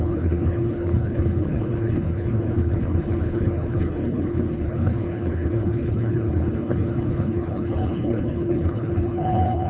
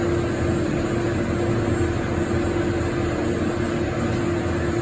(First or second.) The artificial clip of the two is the first